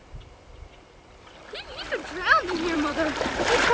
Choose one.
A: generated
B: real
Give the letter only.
A